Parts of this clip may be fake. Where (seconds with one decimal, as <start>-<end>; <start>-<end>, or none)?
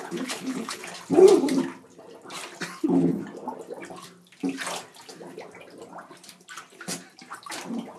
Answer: 0.0-0.8; 2.8-3.2